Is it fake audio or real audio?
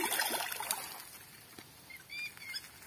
real